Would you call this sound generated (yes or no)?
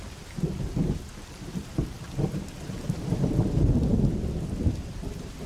no